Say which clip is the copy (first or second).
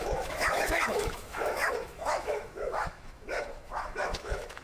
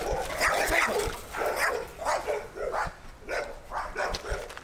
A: first